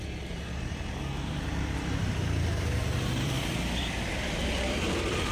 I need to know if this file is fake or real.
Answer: fake